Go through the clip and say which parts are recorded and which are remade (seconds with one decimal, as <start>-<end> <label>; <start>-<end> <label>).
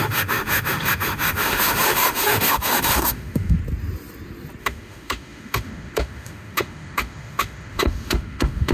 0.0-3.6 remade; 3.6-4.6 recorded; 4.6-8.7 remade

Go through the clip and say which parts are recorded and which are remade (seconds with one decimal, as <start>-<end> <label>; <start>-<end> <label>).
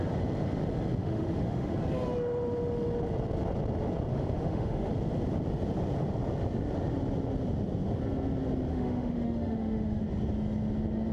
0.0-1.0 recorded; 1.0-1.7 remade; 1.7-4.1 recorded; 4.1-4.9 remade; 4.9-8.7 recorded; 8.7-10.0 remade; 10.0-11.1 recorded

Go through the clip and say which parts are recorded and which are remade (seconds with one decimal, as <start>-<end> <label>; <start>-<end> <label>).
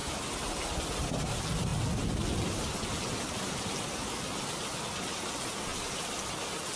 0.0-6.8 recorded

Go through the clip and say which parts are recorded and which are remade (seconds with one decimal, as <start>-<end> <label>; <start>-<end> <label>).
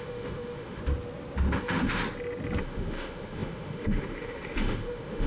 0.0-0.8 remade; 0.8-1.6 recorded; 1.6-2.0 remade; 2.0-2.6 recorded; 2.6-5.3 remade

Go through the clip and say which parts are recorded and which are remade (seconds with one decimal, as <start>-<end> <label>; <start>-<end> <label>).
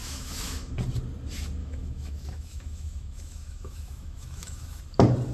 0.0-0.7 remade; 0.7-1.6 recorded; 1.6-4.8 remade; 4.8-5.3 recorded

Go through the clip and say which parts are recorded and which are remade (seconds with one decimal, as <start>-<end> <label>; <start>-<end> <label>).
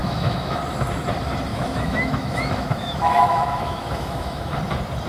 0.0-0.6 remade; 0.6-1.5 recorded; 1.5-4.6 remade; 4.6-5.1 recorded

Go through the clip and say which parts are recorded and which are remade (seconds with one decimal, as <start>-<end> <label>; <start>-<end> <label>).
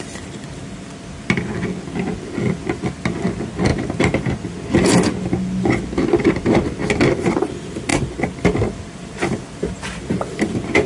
0.0-10.9 recorded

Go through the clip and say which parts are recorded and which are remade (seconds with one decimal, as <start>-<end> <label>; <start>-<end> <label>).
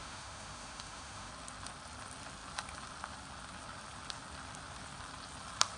0.0-1.3 remade; 1.3-5.8 recorded